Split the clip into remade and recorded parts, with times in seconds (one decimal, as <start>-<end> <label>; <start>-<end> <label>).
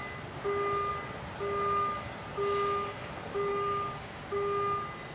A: 0.0-3.5 recorded; 3.5-4.2 remade; 4.2-5.1 recorded